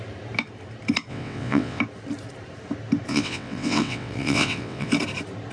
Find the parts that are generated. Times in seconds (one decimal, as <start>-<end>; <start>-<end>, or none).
1.1-1.8; 3.1-4.9